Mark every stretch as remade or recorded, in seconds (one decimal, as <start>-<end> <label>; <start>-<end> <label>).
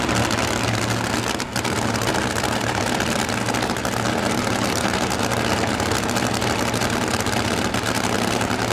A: 0.0-8.7 recorded